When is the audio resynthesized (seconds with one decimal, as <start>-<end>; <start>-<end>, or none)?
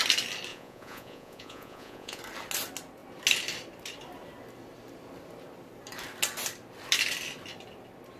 0.5-2.2